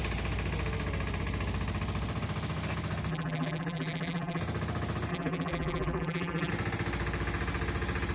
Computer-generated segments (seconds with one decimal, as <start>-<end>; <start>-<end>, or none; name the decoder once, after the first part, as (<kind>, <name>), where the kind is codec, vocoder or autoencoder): 3.1-4.4 (vocoder, BigVGAN v2); 5.1-6.5